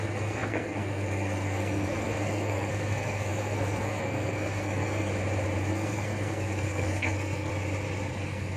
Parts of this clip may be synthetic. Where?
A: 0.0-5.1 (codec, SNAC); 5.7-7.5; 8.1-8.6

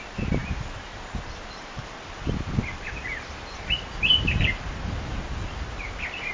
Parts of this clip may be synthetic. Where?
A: none

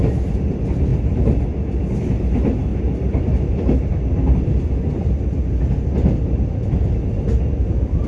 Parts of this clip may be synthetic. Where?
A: 0.9-1.4 (vocoder, BigVGAN v2); 2.7-5.1

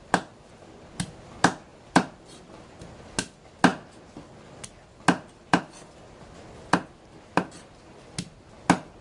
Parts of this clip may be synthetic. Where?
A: 1.7-2.5 (vocoder, BigVGAN v2)

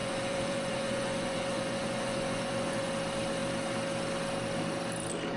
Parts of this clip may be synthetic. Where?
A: 0.0-2.9 (vocoder, Vocos)

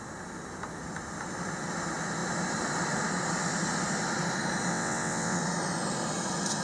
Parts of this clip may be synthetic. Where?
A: 4.7-5.4 (vocoder, WaveNeXt)